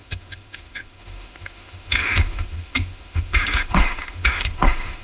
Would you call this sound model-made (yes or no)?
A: yes